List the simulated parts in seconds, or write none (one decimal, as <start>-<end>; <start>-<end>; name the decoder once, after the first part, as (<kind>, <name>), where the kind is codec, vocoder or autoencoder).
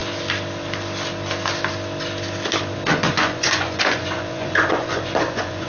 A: 2.9-5.7 (vocoder, Vocos)